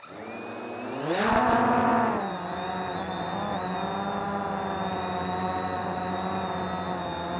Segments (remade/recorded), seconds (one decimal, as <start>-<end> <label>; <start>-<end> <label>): 0.0-7.4 recorded